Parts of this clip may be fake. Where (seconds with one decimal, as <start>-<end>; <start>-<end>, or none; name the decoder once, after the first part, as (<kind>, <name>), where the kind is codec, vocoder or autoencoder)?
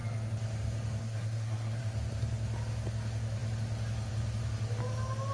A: 1.0-1.8 (codec, SNAC)